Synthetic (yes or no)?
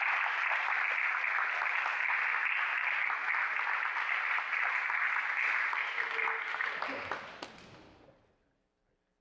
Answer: no